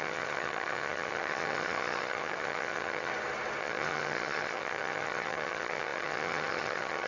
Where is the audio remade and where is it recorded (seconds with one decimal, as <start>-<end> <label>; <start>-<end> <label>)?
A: 0.0-3.1 remade; 3.1-3.6 recorded; 3.6-7.1 remade